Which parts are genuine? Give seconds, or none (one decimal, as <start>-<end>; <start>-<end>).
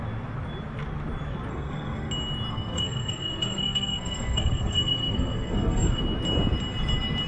0.0-1.5; 2.1-2.5; 6.0-7.3